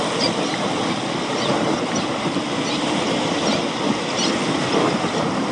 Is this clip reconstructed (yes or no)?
yes